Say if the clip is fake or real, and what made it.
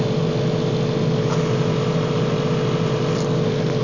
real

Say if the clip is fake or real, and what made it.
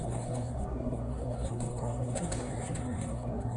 fake, codec, SNAC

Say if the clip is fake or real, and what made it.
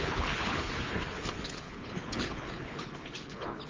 fake, codec, HILCodec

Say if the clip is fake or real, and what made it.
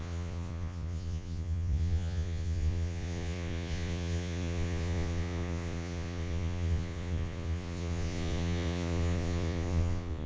fake, vocoder, Vocos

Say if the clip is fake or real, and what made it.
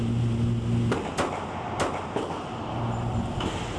real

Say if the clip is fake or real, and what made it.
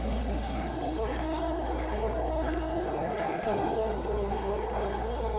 fake, codec, SNAC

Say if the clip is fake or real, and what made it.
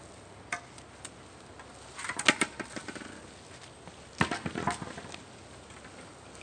real